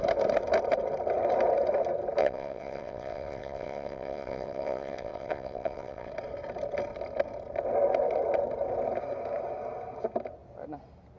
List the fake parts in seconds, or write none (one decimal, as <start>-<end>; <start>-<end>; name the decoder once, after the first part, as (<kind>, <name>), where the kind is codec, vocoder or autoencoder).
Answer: 2.2-6.1 (vocoder, WaveNeXt)